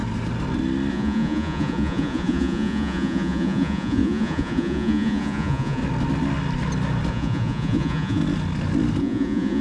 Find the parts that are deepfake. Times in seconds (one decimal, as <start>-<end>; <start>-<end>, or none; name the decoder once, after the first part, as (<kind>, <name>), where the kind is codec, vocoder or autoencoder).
0.9-5.8 (vocoder, Vocos); 7.1-8.2; 9.0-9.6